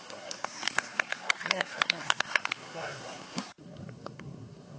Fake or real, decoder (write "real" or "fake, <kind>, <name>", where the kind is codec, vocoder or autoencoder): fake, codec, SNAC